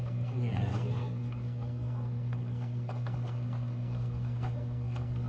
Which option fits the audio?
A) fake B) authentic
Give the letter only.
A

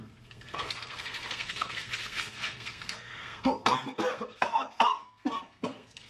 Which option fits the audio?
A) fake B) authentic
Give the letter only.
A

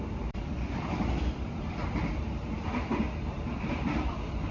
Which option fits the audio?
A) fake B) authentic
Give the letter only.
A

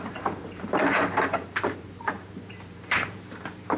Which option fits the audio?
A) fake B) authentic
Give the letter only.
A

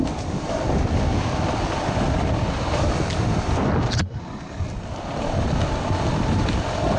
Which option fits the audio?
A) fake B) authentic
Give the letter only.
B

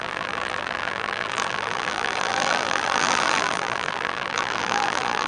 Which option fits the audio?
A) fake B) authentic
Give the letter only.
A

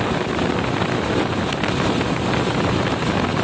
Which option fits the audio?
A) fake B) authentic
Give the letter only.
B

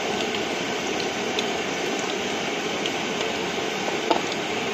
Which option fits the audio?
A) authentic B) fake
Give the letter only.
A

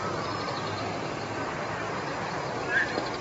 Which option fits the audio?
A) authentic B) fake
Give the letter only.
A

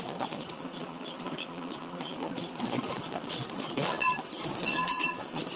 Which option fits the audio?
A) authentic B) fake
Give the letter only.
B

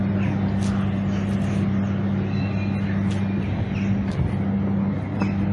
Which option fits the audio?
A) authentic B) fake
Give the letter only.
A